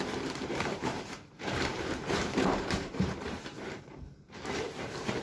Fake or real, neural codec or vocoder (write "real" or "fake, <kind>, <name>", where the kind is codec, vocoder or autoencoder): fake, vocoder, BigVGAN v2